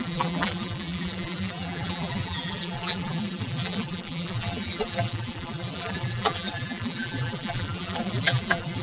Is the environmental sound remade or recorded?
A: remade